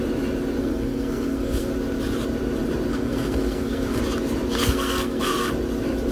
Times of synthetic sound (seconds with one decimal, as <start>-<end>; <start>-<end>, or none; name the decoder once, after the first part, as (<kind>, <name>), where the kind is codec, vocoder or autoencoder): 0.6-1.7 (codec, SNAC); 2.9-4.0; 4.5-5.5